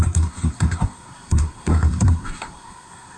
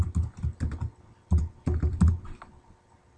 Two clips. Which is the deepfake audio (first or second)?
first